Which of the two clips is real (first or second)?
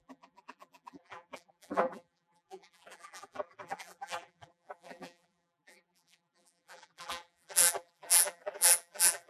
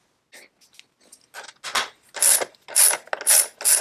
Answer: second